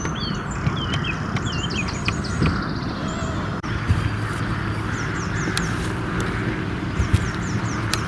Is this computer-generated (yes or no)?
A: no